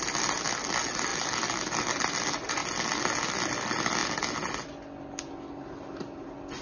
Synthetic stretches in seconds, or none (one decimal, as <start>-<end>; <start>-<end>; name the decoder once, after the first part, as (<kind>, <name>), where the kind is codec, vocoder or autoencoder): none